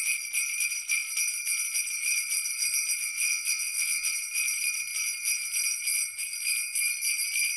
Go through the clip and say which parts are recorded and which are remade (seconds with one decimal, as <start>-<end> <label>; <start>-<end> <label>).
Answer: 0.0-3.0 recorded; 3.0-4.2 remade; 4.2-7.6 recorded